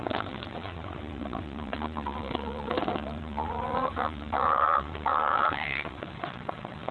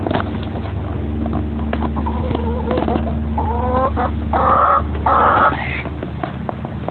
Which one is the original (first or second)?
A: second